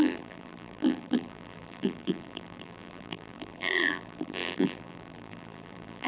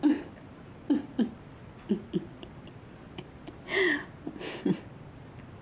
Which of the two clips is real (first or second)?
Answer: second